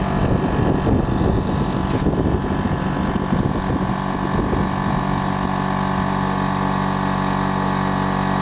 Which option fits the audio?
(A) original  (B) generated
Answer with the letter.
A